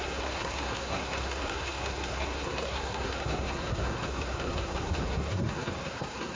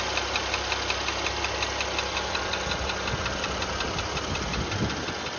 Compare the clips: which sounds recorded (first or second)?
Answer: second